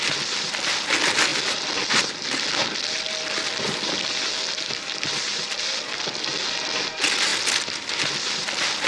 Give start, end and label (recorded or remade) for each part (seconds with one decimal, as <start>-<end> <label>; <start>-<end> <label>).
0.0-8.9 recorded